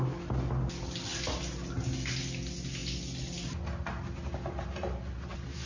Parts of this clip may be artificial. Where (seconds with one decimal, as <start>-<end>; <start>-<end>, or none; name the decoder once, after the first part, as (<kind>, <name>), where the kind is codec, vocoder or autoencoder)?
none